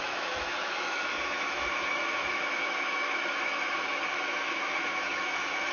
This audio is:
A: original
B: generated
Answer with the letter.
B